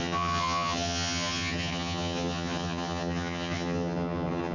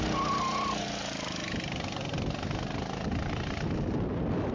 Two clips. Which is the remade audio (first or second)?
first